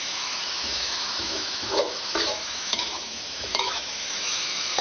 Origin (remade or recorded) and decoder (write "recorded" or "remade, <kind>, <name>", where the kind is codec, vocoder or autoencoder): remade, autoencoder, DAC-VAE